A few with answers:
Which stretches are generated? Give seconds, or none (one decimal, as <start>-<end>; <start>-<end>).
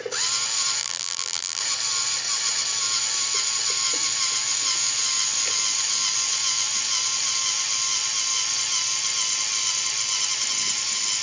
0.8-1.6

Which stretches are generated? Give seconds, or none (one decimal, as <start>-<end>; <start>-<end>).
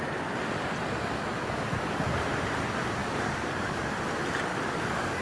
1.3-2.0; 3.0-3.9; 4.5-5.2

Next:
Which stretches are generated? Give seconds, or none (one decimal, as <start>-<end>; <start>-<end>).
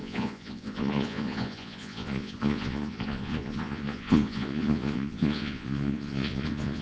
0.0-6.8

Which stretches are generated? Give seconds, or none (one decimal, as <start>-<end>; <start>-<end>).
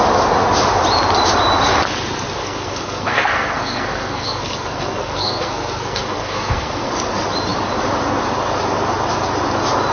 2.4-6.9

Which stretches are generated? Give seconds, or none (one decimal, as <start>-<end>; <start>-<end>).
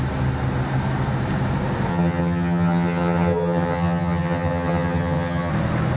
1.9-5.5